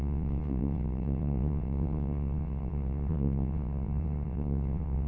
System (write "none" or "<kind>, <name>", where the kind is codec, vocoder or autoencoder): vocoder, WaveNeXt